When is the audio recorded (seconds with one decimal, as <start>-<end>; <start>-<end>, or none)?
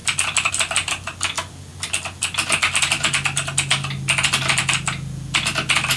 0.0-6.0